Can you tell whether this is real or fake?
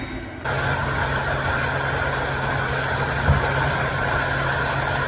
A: real